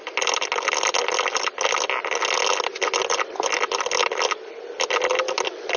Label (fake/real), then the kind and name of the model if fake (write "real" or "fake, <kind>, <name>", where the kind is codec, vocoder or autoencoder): real